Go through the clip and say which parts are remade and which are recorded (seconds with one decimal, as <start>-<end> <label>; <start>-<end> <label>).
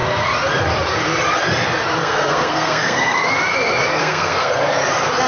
0.0-2.0 recorded; 2.0-3.3 remade; 3.3-4.0 recorded; 4.0-4.5 remade; 4.5-5.3 recorded